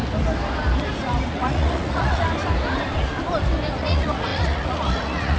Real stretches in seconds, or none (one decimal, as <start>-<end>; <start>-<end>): 0.0-1.3; 2.2-3.8